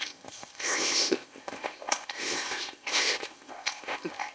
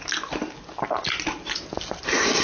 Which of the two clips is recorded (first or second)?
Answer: second